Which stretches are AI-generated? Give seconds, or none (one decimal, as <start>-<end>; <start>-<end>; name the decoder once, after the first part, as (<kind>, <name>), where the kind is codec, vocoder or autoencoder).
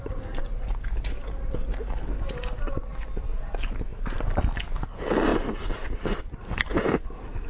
2.9-3.4 (vocoder, BigVGAN v2); 3.9-4.6; 5.3-6.2